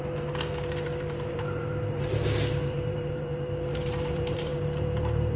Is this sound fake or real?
fake